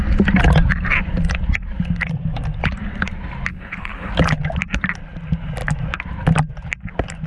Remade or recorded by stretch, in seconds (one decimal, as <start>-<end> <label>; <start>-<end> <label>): 0.0-3.5 recorded; 3.5-4.1 remade; 4.1-7.3 recorded